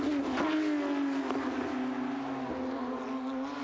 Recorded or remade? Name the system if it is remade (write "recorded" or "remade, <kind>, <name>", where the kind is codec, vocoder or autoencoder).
recorded